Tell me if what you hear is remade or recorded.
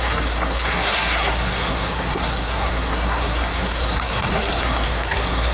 remade